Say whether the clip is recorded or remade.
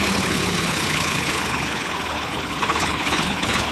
remade